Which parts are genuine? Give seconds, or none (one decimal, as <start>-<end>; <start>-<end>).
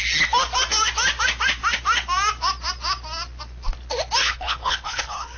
0.0-4.2